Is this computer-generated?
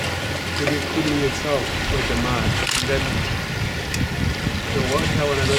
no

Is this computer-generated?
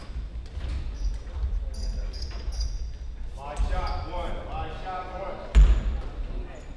no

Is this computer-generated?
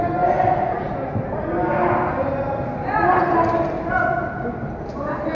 no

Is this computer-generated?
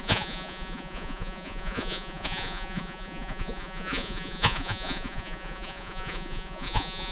yes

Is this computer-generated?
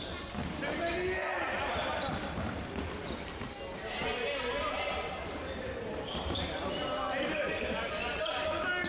no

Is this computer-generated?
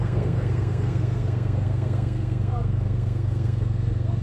yes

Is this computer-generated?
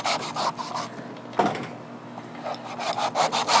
no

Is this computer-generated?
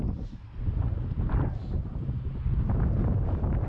no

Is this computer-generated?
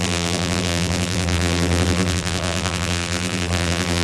yes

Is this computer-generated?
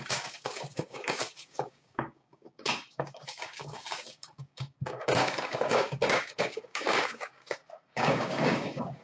yes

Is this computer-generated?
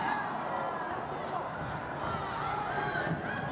no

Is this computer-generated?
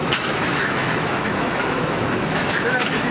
yes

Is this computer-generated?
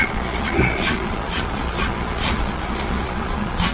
yes